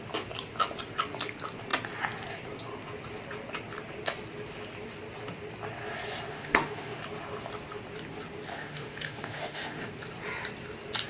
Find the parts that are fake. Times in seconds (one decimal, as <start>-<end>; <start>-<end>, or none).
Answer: 6.3-7.0; 8.5-9.9